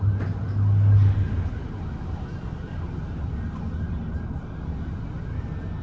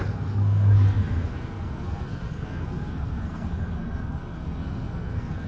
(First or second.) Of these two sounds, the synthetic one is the second